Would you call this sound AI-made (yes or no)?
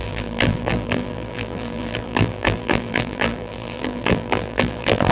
yes